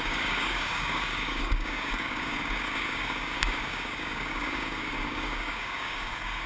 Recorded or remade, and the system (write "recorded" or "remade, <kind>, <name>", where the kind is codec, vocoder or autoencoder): remade, codec, DAC